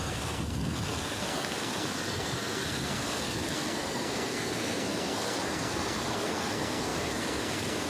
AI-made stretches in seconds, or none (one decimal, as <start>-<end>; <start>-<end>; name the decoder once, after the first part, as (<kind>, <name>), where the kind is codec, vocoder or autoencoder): 0.0-7.9 (codec, SNAC)